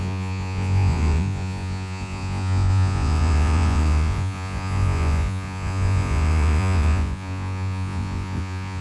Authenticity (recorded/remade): remade